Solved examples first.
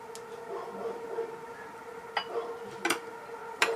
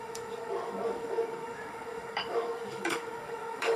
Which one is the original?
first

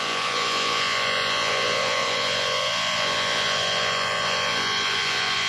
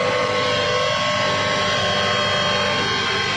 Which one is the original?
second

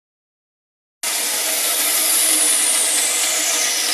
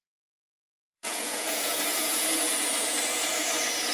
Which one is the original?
first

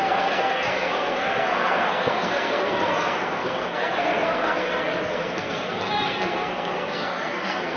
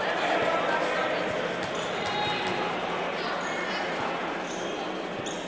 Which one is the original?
second